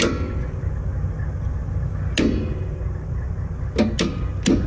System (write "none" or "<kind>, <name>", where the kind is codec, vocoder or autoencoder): none